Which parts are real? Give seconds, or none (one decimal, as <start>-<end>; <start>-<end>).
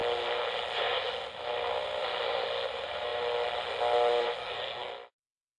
0.0-4.4; 4.9-5.6